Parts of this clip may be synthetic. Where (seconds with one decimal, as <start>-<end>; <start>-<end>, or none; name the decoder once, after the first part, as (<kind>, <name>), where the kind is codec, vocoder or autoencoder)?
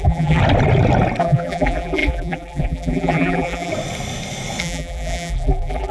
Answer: 0.0-0.4 (vocoder, BigVGAN v2); 1.2-3.7; 4.6-5.9